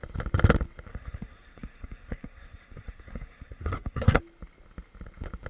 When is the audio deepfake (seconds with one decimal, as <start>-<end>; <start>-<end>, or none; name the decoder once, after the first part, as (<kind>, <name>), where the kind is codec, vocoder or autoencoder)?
0.9-4.2 (codec, SNAC)